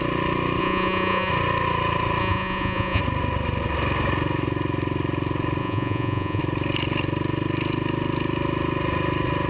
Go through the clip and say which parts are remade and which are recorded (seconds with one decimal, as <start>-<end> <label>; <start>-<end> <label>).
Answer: 0.0-0.6 recorded; 0.6-1.3 remade; 1.3-2.2 recorded; 2.2-3.0 remade; 3.0-5.6 recorded; 5.6-6.4 remade; 6.4-9.5 recorded